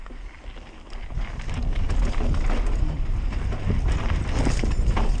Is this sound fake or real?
real